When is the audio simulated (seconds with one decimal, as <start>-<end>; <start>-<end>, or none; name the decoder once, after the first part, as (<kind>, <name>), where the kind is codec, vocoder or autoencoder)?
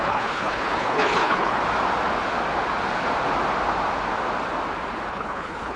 0.0-1.6 (codec, HILCodec); 5.1-5.8